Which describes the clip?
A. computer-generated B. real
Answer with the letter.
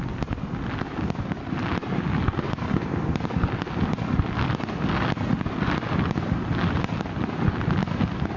B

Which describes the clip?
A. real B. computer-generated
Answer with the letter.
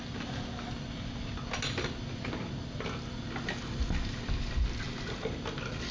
A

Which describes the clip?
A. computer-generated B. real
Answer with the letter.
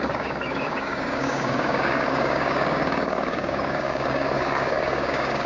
A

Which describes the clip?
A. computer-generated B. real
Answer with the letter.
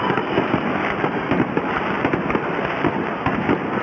B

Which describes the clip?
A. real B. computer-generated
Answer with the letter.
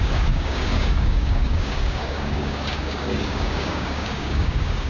B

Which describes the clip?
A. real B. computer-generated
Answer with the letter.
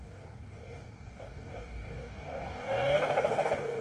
B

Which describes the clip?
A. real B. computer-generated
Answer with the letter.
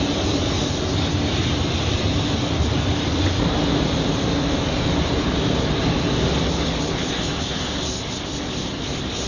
A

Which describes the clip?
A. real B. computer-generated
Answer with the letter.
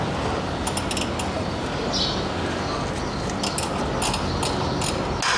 A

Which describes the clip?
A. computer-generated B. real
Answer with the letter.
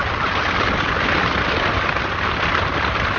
B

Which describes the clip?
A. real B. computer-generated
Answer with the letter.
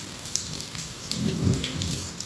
B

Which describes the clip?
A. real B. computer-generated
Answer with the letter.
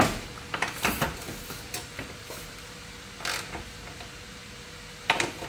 A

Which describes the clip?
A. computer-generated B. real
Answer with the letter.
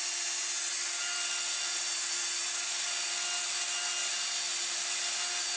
B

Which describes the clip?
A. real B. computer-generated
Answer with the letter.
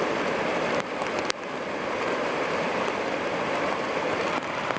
A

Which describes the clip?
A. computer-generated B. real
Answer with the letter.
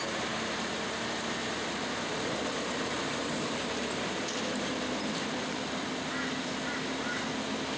B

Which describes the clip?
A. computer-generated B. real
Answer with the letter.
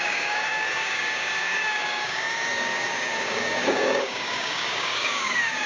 A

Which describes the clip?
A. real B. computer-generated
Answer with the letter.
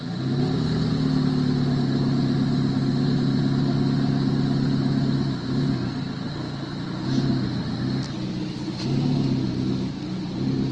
A